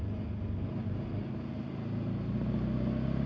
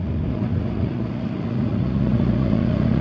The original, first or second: first